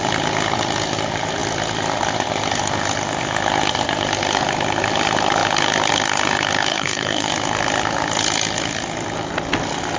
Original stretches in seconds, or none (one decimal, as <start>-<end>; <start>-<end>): 0.0-6.7; 7.3-10.0